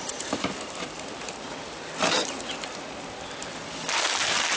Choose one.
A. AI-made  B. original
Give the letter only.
B